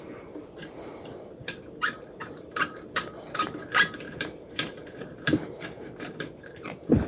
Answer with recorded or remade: remade